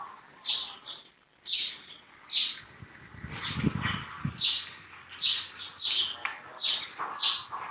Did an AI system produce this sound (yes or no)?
no